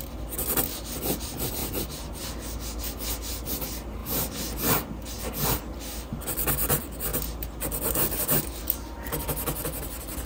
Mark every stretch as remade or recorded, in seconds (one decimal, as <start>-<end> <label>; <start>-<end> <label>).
0.0-10.3 recorded